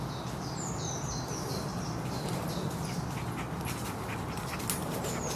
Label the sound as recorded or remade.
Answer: recorded